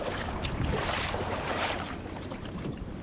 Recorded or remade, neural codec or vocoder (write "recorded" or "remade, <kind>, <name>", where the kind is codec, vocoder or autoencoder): remade, vocoder, BigVGAN v2